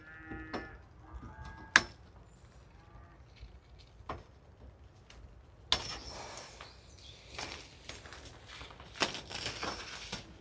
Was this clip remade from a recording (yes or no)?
no